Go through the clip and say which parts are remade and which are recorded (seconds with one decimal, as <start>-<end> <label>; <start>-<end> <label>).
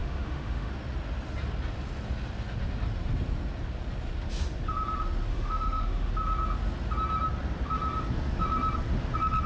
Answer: 0.0-0.7 remade; 0.7-5.3 recorded; 5.3-6.1 remade; 6.1-9.5 recorded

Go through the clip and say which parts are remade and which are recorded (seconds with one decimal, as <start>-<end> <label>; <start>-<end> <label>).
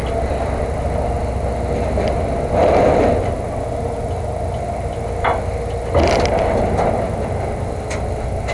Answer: 0.0-8.5 recorded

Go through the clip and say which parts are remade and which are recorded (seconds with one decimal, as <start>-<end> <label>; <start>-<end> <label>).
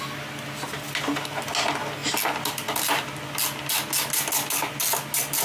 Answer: 0.0-5.4 recorded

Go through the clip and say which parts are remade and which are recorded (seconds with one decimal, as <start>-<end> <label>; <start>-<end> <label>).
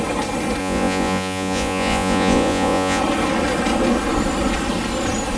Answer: 0.0-0.6 recorded; 0.6-3.0 remade; 3.0-5.4 recorded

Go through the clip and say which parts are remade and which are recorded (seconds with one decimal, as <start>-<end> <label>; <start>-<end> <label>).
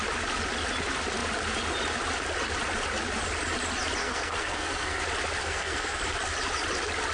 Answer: 0.0-4.0 recorded; 4.0-5.0 remade; 5.0-5.4 recorded; 5.4-6.0 remade; 6.0-7.1 recorded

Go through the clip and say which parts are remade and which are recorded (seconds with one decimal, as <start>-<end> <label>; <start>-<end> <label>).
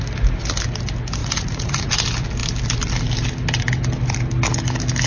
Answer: 0.0-1.2 recorded; 1.2-1.9 remade; 1.9-5.1 recorded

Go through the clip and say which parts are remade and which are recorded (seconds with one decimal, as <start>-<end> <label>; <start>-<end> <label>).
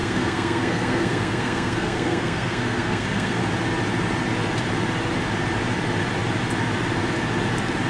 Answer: 0.0-3.4 remade; 3.4-7.9 recorded